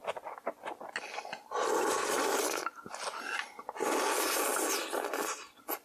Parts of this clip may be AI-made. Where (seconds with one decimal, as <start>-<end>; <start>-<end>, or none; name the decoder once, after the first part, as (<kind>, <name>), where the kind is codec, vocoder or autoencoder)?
none

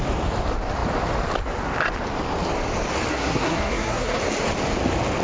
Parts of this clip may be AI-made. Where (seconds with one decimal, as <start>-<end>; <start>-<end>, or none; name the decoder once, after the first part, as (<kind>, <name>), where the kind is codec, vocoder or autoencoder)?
3.1-4.2 (codec, SNAC)

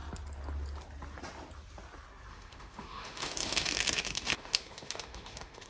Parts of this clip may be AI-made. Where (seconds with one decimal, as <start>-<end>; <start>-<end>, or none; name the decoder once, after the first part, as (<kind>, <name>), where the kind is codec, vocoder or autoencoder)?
2.3-5.7 (autoencoder, DAC-VAE)

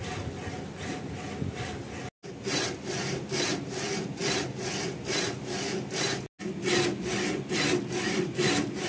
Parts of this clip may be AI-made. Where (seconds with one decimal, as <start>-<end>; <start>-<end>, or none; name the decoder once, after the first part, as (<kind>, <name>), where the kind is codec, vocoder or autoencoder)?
none

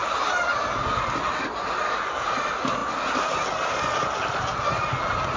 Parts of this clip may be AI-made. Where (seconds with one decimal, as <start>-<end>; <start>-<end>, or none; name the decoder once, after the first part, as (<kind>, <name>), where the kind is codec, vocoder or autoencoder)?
none

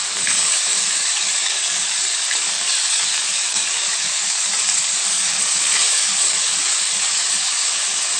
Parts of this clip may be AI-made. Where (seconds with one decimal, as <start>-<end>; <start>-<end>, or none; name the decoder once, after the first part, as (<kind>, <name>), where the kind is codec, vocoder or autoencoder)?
0.0-8.2 (codec, DAC)